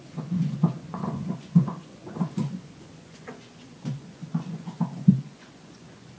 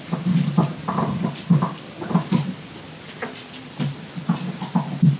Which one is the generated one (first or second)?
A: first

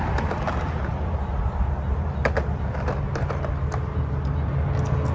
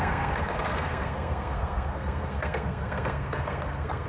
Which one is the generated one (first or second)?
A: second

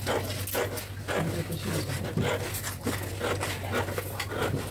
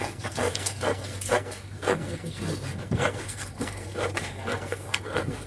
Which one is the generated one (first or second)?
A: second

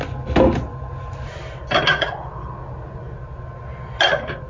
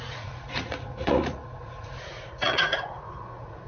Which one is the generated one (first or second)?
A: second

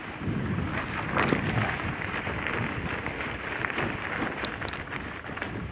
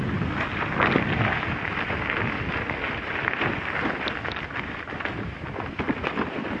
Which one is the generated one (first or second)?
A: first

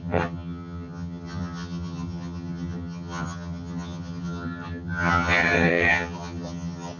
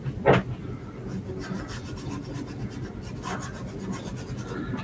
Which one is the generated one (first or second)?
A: first